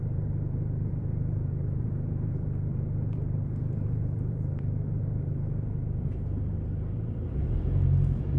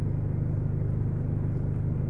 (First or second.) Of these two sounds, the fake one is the first